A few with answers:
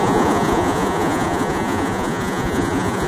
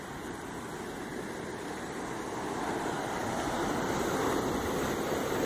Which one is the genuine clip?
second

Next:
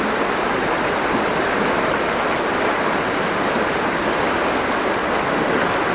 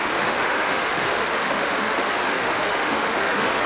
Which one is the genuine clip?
first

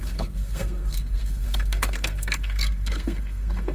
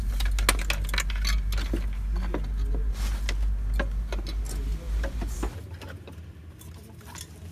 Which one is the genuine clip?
second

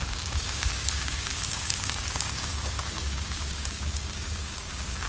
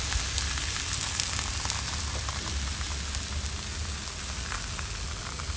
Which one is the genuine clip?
second